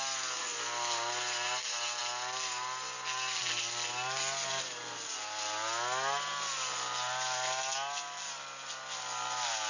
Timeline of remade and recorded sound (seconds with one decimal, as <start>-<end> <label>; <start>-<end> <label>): 0.0-9.7 recorded